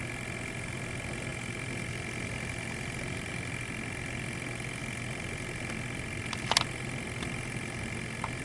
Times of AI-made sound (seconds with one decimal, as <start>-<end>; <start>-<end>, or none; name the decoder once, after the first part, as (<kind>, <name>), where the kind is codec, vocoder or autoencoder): 1.3-3.3 (vocoder, BigVGAN v2); 4.8-5.7